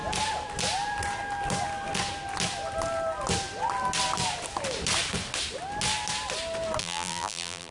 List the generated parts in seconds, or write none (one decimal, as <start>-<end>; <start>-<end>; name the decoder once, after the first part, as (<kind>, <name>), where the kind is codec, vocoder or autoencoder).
6.8-7.7 (vocoder, BigVGAN v2)